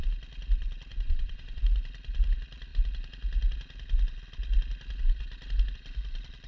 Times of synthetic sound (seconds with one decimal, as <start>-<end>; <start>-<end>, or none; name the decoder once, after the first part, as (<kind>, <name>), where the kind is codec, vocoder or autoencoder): 0.9-1.6 (vocoder, Vocos)